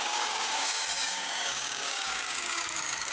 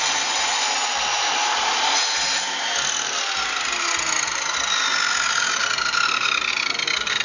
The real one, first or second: second